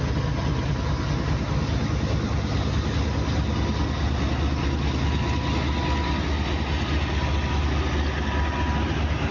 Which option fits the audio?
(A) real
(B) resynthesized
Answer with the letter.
A